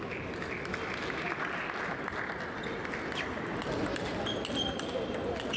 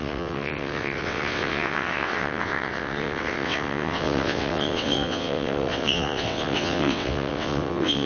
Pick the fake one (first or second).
second